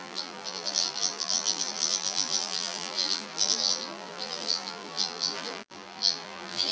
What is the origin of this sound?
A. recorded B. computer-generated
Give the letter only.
B